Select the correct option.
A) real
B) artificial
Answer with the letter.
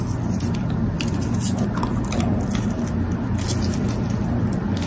A